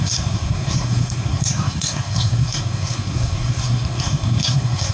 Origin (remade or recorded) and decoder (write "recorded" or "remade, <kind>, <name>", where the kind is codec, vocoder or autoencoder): remade, codec, SNAC